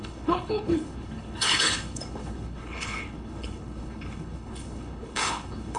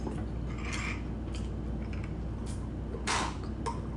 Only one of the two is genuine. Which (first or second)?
second